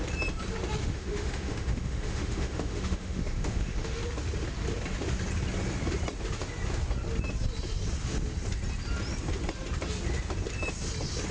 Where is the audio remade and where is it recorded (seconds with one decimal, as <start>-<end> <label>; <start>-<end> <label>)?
0.0-0.8 recorded; 0.8-4.0 remade; 4.0-11.3 recorded